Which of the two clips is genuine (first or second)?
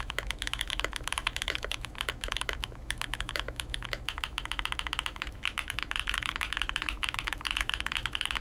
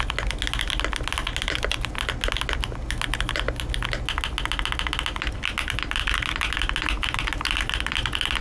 second